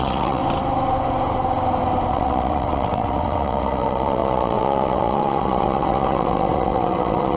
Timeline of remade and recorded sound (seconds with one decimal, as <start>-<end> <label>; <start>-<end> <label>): 0.0-0.4 remade; 0.4-2.1 recorded; 2.1-7.4 remade

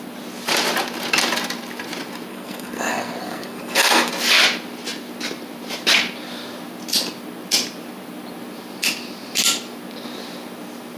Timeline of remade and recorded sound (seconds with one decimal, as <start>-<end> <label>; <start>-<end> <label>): 0.0-2.3 recorded; 2.3-4.1 remade; 4.1-11.0 recorded

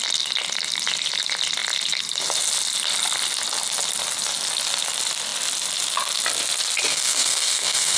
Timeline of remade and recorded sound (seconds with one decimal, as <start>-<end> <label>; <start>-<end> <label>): 0.0-6.9 recorded; 6.9-8.0 remade